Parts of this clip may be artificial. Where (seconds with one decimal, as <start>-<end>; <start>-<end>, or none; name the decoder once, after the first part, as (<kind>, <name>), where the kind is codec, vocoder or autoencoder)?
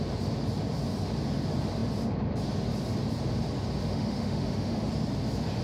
3.9-4.9 (autoencoder, DAC-VAE)